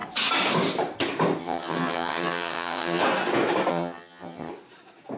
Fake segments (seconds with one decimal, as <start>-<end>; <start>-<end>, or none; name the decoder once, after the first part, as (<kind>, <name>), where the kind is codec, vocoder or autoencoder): 1.4-3.0 (vocoder, HiFi-GAN); 3.7-4.5